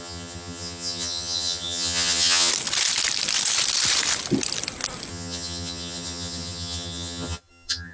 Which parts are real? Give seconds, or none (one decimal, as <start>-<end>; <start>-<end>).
2.5-5.1